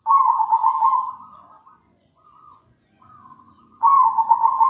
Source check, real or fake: fake